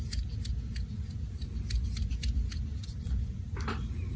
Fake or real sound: real